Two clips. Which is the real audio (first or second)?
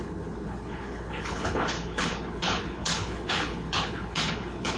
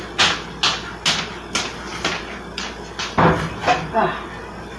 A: second